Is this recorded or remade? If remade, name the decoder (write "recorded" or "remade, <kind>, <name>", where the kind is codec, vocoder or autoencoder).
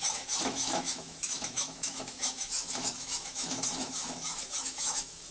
remade, autoencoder, DAC-VAE